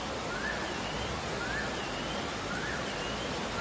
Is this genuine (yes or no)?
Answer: yes